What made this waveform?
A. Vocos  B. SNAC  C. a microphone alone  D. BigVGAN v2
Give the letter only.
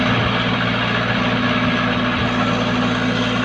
C